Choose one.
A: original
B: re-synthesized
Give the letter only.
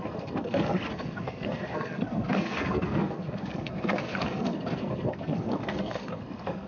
B